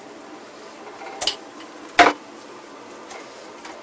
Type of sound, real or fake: real